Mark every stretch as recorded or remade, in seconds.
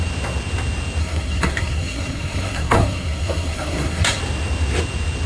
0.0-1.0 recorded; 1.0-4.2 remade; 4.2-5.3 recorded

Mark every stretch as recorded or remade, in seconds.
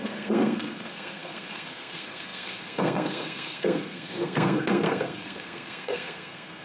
0.0-6.6 remade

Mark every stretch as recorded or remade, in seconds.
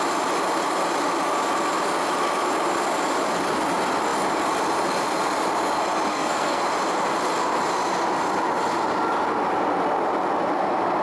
0.0-6.1 recorded; 6.1-6.6 remade; 6.6-11.0 recorded